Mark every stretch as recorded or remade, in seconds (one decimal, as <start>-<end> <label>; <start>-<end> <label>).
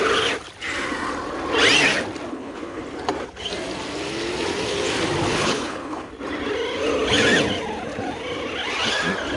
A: 0.0-2.3 recorded; 2.3-2.8 remade; 2.8-5.3 recorded; 5.3-6.1 remade; 6.1-9.4 recorded